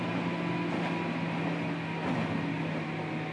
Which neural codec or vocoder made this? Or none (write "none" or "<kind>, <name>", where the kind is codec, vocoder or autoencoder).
none